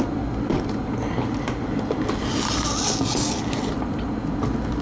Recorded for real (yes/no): yes